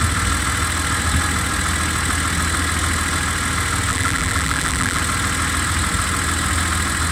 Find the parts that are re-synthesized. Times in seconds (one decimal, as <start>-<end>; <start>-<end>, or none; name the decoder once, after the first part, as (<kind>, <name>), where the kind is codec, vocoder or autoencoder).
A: 3.9-5.0 (vocoder, BigVGAN v2)